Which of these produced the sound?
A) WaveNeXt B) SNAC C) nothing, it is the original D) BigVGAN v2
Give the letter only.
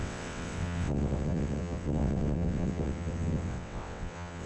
A